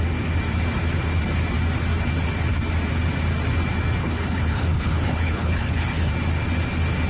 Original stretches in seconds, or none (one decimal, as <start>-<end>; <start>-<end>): 0.0-4.0; 6.1-7.1